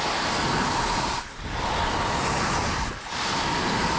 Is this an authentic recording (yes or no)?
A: yes